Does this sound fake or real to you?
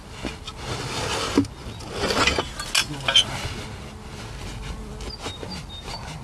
real